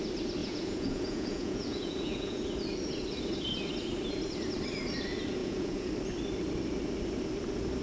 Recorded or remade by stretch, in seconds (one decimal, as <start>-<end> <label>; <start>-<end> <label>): 0.0-0.4 recorded; 0.4-2.4 remade; 2.4-5.4 recorded; 5.4-5.9 remade; 5.9-7.8 recorded